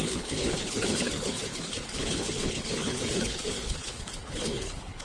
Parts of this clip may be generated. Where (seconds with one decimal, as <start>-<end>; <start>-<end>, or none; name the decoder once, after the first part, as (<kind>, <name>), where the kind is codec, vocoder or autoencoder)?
0.0-5.0 (codec, HILCodec)